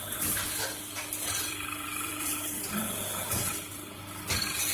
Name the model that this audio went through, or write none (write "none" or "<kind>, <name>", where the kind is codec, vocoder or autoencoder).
vocoder, BigVGAN v2